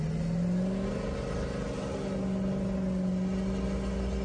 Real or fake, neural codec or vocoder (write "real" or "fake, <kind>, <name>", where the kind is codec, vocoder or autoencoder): real